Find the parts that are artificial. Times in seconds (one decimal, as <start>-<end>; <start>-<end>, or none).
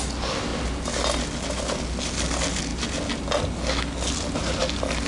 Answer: none